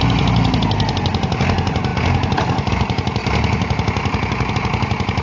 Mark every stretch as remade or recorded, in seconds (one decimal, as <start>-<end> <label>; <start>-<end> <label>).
0.0-5.2 recorded